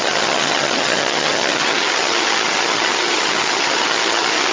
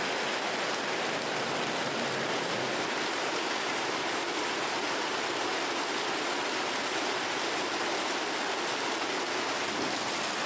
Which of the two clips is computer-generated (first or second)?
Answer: first